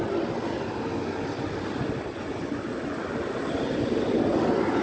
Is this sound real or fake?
real